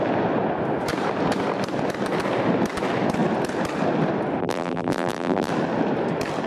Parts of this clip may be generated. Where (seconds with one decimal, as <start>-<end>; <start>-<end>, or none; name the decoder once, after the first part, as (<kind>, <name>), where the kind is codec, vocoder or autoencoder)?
4.4-5.5 (vocoder, BigVGAN v2)